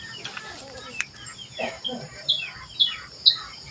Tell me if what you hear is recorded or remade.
recorded